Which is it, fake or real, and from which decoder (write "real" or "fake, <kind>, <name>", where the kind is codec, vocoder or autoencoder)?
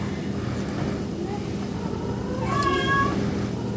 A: real